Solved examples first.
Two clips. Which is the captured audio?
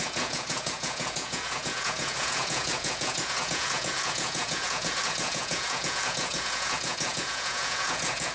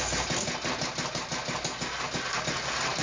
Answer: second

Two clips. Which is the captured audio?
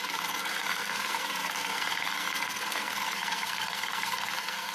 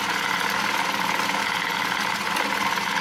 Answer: second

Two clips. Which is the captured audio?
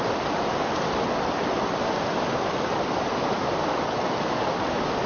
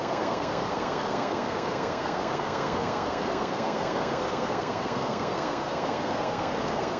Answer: first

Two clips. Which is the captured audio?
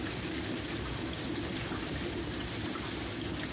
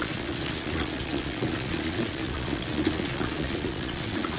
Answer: first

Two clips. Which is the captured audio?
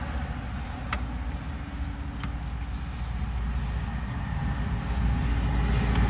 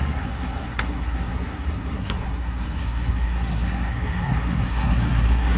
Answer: first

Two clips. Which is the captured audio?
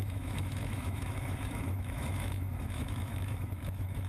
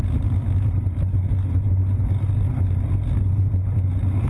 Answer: second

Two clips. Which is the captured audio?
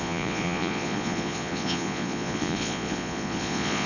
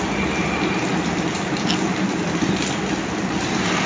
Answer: second